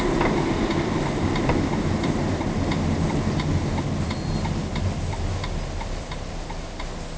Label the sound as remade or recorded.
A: recorded